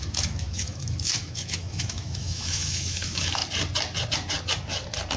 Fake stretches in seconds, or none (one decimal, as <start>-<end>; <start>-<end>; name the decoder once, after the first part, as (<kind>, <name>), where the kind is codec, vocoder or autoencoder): 0.0-3.4 (autoencoder, DAC-VAE)